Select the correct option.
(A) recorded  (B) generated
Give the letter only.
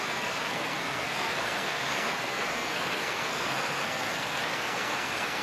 B